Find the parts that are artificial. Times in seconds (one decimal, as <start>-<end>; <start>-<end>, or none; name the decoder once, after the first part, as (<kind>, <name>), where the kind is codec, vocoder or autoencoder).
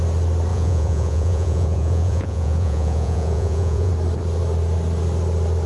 0.5-3.9 (vocoder, Vocos)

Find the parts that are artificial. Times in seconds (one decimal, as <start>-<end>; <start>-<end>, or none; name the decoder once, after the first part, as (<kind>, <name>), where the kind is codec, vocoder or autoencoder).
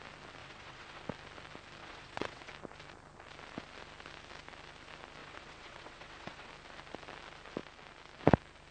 0.4-1.0 (vocoder, WaveNeXt); 1.8-2.5; 5.2-6.5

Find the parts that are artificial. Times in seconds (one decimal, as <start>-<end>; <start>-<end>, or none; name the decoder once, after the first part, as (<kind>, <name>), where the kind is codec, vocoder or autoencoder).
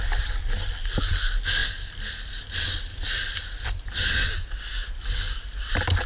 none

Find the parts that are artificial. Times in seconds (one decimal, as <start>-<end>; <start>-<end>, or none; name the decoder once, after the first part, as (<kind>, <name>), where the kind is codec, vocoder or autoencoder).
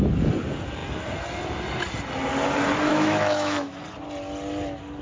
2.9-3.8 (autoencoder, DAC-VAE)